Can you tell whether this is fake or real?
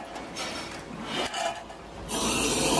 real